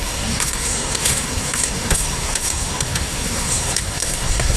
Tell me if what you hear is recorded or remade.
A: remade